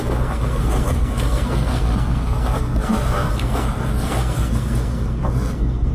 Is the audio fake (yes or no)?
yes